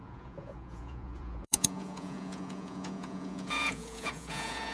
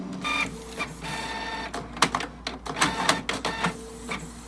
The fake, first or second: first